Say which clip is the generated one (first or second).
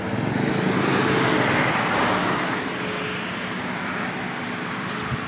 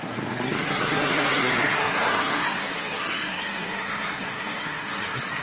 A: second